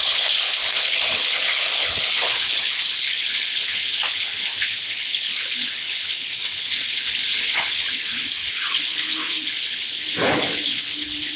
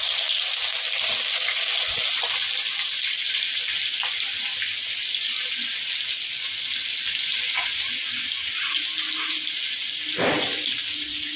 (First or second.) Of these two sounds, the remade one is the first